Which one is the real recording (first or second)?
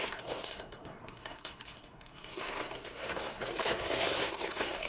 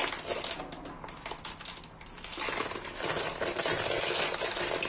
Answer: second